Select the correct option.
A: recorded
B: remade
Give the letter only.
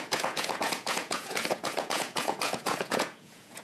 B